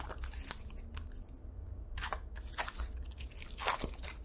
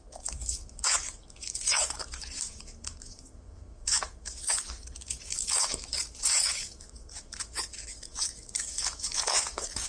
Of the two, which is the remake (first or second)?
second